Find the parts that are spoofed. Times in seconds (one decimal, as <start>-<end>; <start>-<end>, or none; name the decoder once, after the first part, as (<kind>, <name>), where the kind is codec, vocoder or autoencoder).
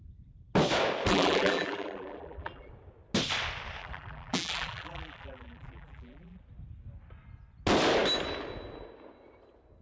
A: 1.1-2.7 (vocoder, BigVGAN v2); 3.8-6.4